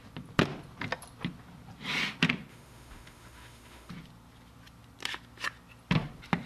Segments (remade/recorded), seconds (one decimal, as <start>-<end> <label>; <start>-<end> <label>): 0.0-2.5 recorded; 2.5-3.9 remade; 3.9-6.5 recorded